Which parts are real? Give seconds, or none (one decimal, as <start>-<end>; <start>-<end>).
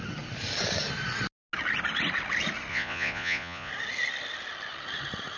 0.0-2.7; 3.7-5.4